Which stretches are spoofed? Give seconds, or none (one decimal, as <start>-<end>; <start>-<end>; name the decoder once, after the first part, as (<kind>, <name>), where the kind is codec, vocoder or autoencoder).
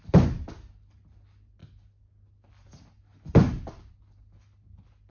none